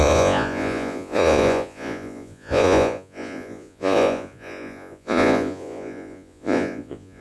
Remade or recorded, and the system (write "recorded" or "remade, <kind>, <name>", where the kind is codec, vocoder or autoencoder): remade, vocoder, Vocos